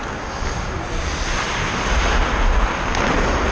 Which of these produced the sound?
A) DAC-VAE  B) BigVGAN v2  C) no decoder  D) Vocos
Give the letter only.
C